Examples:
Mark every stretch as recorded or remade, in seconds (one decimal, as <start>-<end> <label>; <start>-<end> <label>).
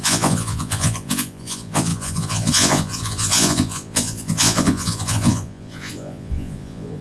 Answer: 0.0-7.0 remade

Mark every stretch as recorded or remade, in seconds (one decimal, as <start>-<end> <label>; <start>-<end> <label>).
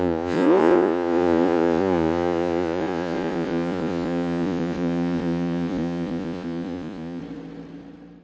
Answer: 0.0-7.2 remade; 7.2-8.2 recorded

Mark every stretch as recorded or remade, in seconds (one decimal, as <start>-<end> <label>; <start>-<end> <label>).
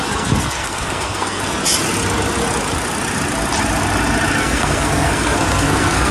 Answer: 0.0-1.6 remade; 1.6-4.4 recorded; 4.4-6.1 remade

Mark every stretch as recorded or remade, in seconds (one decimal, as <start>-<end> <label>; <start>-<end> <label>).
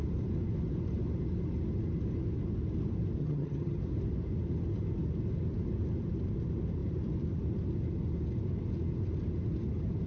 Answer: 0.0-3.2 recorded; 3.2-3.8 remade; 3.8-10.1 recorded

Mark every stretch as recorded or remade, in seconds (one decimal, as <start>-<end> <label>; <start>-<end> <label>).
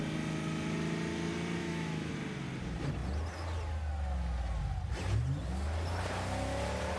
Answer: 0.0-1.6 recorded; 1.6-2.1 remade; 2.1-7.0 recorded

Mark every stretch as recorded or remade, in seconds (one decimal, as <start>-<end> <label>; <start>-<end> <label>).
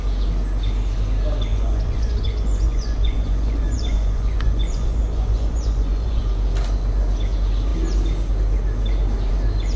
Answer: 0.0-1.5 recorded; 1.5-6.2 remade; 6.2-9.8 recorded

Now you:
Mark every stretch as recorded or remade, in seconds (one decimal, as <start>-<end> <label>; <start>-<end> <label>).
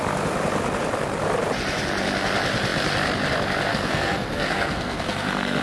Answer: 0.0-3.7 recorded; 3.7-5.6 remade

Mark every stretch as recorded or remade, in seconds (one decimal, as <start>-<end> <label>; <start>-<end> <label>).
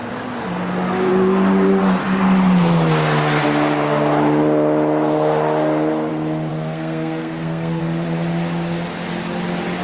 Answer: 0.0-6.5 recorded; 6.5-7.8 remade; 7.8-9.8 recorded